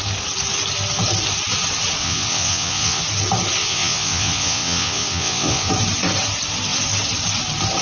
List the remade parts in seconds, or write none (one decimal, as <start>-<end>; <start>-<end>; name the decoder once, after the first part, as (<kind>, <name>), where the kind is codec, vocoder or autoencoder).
2.0-3.0 (vocoder, WaveNeXt); 3.6-5.7